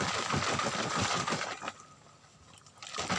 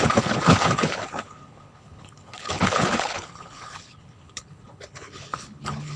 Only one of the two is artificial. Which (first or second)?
second